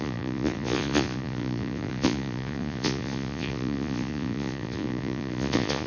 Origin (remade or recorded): remade